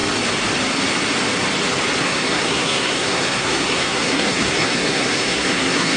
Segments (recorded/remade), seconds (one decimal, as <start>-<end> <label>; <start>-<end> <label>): 0.0-2.0 recorded; 2.0-6.0 remade